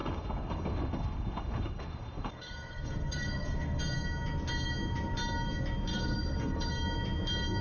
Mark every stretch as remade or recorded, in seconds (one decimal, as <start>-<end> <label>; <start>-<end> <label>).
0.0-3.8 remade; 3.8-5.9 recorded; 5.9-6.7 remade; 6.7-7.6 recorded

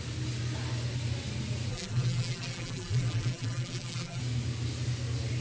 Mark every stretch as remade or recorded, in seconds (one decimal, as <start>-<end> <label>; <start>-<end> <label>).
0.0-1.7 recorded; 1.7-4.2 remade; 4.2-5.4 recorded

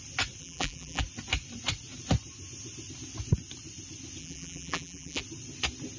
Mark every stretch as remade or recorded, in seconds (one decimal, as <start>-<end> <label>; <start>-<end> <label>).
0.0-0.4 recorded; 0.4-1.0 remade; 1.0-4.2 recorded; 4.2-5.2 remade; 5.2-6.0 recorded

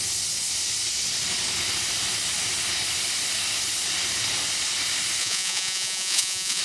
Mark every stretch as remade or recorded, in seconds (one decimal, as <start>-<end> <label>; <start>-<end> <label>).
0.0-5.2 recorded; 5.2-6.6 remade